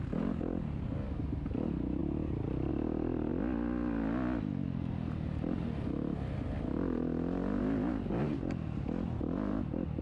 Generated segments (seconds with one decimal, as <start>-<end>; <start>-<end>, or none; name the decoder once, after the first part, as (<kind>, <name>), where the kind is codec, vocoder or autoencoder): none